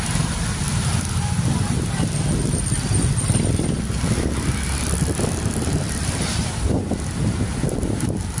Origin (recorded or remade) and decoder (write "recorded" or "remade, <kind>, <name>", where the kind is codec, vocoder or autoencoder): recorded